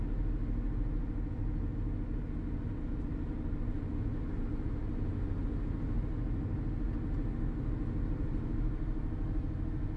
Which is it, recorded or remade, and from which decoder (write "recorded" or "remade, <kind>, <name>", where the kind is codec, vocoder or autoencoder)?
recorded